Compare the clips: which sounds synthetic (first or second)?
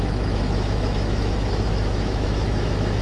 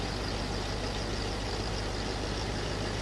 first